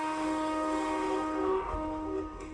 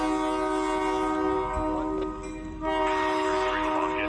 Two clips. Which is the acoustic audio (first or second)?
second